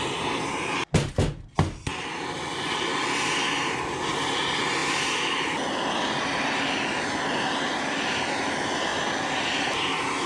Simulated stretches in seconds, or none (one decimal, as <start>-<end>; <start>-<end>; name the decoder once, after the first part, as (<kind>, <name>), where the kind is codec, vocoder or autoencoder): none